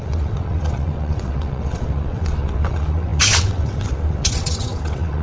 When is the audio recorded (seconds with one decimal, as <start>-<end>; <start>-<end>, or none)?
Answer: none